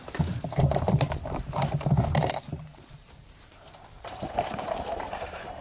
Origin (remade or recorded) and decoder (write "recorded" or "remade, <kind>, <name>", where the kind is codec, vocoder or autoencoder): remade, vocoder, BigVGAN v2